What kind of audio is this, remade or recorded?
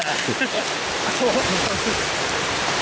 recorded